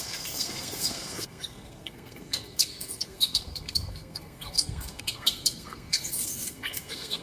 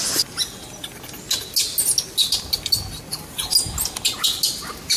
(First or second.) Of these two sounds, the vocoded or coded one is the first